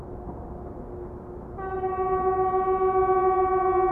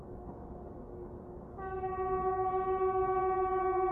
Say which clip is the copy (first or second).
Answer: second